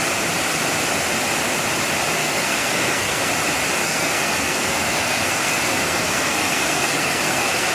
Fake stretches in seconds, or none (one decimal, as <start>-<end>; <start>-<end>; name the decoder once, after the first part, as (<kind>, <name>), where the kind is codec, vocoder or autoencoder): 2.2-3.3 (codec, SNAC); 3.8-7.7